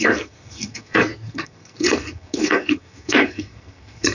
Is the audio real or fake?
fake